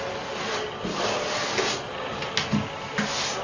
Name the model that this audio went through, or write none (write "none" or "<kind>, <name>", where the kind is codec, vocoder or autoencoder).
none